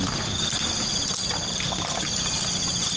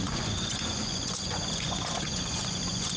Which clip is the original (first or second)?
first